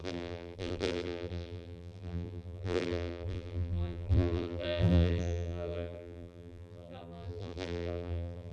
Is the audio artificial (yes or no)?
yes